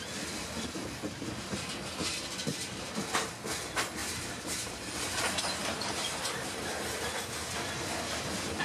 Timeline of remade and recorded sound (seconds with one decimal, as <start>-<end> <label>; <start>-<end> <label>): 0.0-2.5 recorded; 2.5-3.0 remade; 3.0-4.0 recorded; 4.0-6.6 remade; 6.6-8.6 recorded

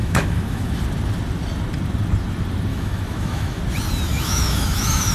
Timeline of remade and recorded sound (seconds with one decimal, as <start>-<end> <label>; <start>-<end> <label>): 0.0-0.8 remade; 0.8-2.7 recorded; 2.7-3.6 remade; 3.6-4.1 recorded; 4.1-5.1 remade

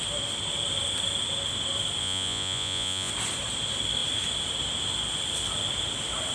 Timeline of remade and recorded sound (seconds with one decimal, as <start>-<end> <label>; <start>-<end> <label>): 0.0-2.0 recorded; 2.0-3.1 remade; 3.1-6.3 recorded

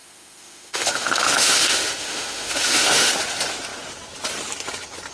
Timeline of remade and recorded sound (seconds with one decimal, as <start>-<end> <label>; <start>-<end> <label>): 0.0-3.1 remade; 3.1-5.1 recorded